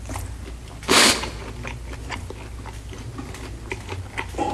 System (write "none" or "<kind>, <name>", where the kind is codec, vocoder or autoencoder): none